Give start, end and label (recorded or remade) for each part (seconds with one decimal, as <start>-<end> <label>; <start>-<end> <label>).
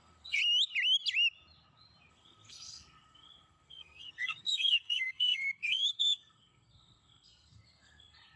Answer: 0.0-0.4 remade; 0.4-2.1 recorded; 2.1-8.4 remade